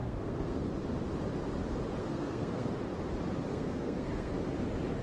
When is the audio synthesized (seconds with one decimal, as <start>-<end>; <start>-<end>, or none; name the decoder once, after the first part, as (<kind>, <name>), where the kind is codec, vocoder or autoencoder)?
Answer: 0.0-0.6 (codec, SNAC); 2.0-2.7; 3.5-4.4